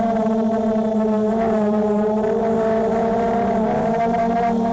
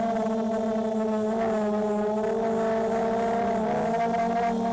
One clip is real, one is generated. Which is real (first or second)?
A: second